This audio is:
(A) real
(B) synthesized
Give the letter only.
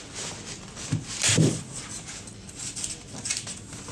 A